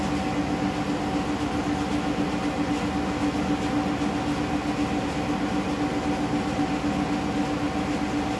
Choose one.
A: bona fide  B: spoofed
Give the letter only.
A